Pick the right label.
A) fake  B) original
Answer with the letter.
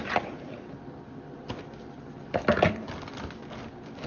B